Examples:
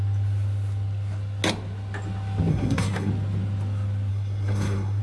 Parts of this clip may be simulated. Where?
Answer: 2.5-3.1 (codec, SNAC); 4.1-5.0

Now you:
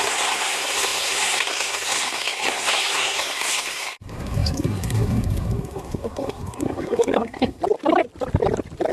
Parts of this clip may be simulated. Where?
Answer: 0.0-7.6 (codec, SNAC)

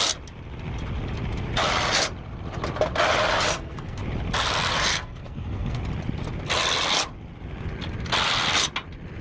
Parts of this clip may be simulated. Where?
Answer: 3.5-4.0 (codec, SNAC); 4.9-5.8

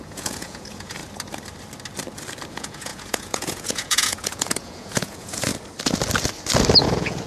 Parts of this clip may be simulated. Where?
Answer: 0.0-1.0 (vocoder, Vocos); 2.5-5.5; 6.8-7.3

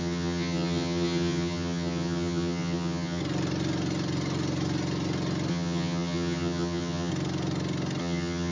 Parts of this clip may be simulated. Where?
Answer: 0.0-3.2 (vocoder, HiFi-GAN); 5.5-7.1; 8.0-8.5